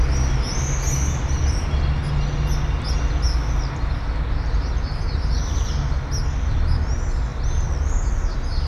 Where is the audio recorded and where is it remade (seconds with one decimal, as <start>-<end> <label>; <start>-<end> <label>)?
0.0-8.7 recorded